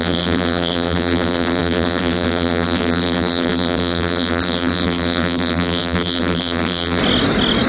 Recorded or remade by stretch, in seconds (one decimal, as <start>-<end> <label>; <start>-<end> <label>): 0.0-7.0 remade; 7.0-7.7 recorded